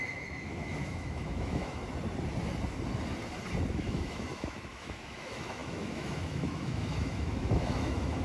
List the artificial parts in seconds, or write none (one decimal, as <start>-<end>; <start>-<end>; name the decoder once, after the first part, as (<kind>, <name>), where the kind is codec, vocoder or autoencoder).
0.0-1.8 (autoencoder, DAC-VAE); 3.7-8.2

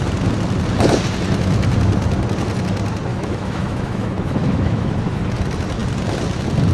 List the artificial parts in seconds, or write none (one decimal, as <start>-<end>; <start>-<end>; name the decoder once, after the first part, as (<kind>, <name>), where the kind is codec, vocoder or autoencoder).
3.1-4.9 (autoencoder, DAC-VAE)